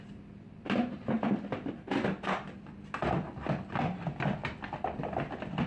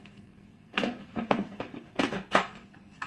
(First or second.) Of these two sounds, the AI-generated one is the second